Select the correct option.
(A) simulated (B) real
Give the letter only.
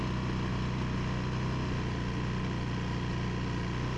B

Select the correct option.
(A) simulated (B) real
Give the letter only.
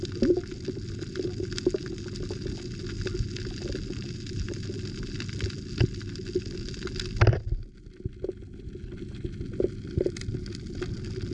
B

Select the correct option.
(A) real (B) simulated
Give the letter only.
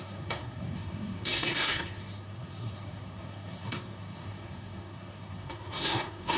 B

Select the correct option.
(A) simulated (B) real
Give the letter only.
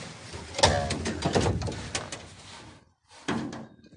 B